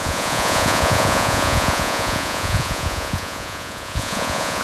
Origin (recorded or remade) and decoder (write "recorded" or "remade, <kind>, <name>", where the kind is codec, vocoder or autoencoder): remade, vocoder, Vocos